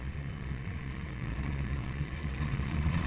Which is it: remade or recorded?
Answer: remade